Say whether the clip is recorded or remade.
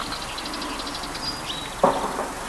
recorded